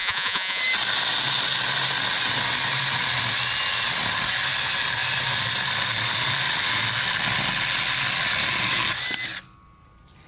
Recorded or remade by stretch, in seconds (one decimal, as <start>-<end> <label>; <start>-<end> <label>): 0.0-0.6 remade; 0.6-10.3 recorded